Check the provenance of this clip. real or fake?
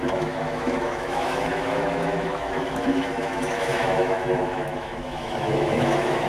fake